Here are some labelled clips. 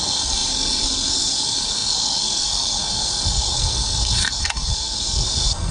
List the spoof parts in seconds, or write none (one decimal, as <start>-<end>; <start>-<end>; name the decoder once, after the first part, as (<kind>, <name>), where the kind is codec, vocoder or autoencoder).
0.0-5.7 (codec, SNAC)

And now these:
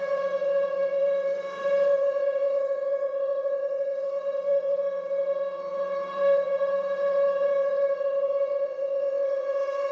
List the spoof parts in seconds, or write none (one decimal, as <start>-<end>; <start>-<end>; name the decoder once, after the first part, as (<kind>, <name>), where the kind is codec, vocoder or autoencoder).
0.0-9.9 (vocoder, WaveNeXt)

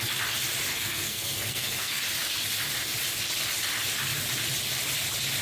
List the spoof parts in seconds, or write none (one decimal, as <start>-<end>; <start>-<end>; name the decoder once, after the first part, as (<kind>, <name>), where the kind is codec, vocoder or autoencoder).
0.7-2.0 (codec, SNAC)

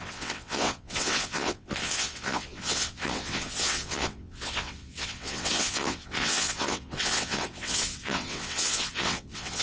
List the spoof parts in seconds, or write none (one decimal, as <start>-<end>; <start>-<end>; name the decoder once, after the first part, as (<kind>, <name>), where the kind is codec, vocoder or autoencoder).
0.0-9.6 (vocoder, WaveNeXt)

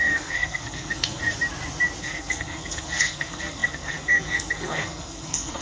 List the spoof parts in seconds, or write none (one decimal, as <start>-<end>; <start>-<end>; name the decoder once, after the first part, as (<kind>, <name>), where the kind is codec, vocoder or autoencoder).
0.0-1.2 (codec, SNAC); 2.0-5.6

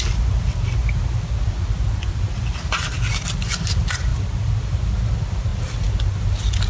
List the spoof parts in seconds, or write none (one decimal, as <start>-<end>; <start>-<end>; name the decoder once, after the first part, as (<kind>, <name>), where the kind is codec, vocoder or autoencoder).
none

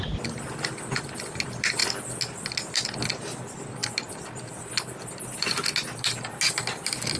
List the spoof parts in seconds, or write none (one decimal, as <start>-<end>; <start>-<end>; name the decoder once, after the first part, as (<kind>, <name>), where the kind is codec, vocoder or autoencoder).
none